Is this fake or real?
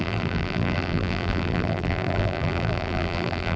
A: fake